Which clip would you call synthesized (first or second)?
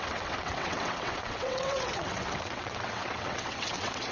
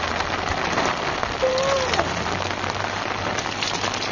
first